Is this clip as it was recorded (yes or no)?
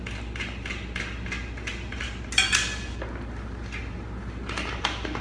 yes